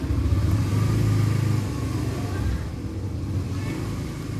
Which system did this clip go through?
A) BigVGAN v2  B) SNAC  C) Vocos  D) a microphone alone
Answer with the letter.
D